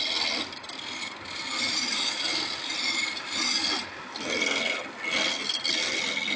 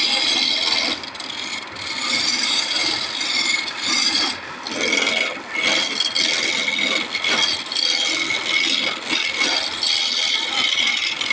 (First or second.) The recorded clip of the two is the first